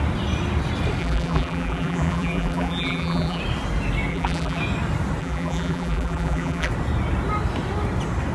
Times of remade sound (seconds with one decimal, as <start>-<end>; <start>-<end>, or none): 1.0-3.4; 4.1-4.6; 5.2-6.7